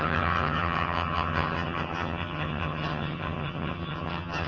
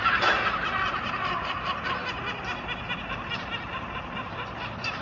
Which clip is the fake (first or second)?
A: first